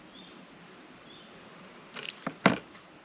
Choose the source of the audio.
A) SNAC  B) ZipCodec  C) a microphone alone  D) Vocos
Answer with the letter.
C